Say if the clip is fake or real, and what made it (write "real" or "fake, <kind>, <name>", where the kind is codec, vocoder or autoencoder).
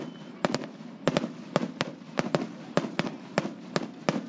real